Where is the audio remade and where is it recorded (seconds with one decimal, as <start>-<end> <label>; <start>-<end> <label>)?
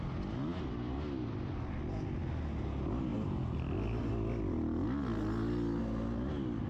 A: 0.0-6.7 recorded